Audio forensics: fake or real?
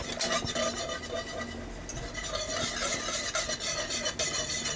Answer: real